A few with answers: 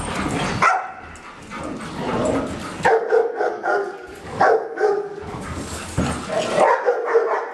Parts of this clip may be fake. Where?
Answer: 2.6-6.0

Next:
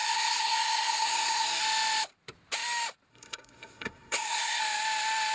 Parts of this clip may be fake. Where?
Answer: 0.0-1.6; 3.1-4.6

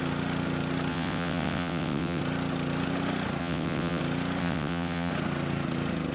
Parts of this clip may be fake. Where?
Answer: 0.9-2.2; 3.4-4.0; 4.4-5.1

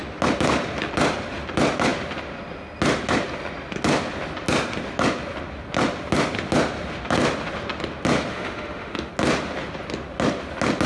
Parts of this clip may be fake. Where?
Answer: 8.3-9.1

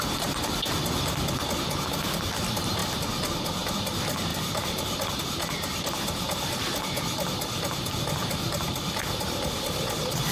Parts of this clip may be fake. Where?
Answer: none

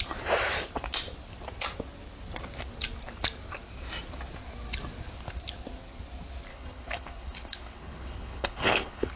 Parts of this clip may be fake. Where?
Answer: 6.5-9.2

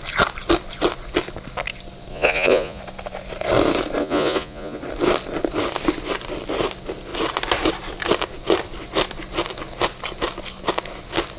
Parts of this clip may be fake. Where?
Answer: 2.1-2.8; 4.0-4.8